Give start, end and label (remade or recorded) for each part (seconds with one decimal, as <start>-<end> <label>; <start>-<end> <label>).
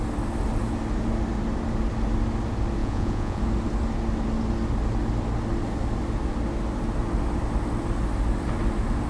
0.0-2.8 recorded; 2.8-3.4 remade; 3.4-9.1 recorded